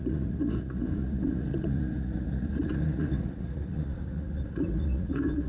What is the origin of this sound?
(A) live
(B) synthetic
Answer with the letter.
B